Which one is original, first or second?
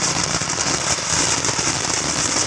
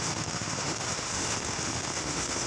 first